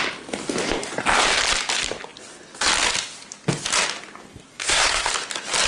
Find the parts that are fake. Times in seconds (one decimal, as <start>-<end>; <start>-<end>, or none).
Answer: 4.5-5.1